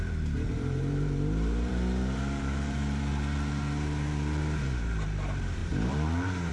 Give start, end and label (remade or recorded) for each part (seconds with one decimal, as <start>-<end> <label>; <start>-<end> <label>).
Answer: 0.0-6.5 remade